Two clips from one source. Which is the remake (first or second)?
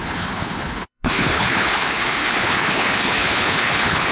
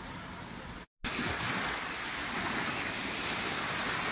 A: first